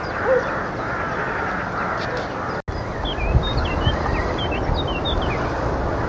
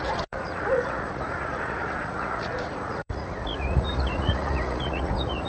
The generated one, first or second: second